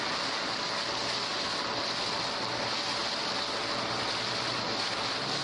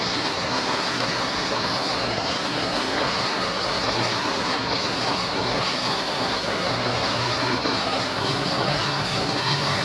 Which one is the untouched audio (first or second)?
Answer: first